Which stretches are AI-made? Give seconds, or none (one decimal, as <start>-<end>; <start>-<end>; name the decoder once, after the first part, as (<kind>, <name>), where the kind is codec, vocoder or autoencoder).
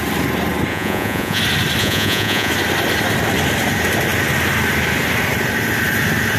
0.7-1.4 (vocoder, Vocos); 1.8-2.5